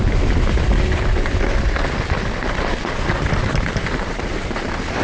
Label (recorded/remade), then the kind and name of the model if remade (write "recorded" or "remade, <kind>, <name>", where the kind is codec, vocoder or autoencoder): recorded